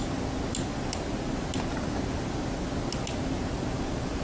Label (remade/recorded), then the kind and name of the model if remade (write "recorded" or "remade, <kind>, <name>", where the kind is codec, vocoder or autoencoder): recorded